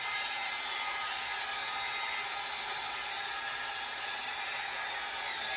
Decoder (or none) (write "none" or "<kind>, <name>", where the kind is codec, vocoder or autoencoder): none